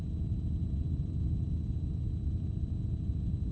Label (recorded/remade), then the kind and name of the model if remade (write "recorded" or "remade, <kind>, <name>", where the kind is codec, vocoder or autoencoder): recorded